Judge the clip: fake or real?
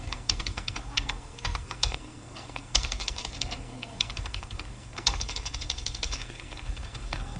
fake